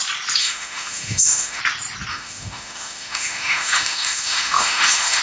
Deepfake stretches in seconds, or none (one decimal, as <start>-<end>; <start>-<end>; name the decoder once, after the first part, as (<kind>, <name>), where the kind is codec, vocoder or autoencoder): 0.4-1.6 (autoencoder, DAC-VAE); 2.1-5.2